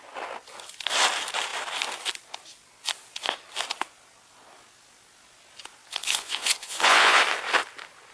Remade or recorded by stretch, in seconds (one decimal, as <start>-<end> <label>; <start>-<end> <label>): 0.0-6.0 recorded; 6.0-7.2 remade; 7.2-8.1 recorded